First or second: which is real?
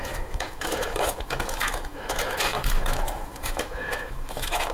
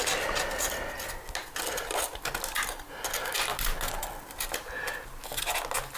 second